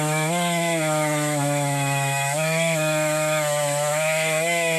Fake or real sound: fake